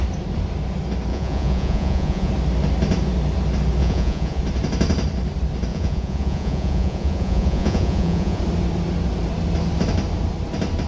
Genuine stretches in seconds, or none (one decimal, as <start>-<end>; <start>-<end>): 0.0-1.1; 2.3-3.8; 4.4-5.7; 8.4-10.9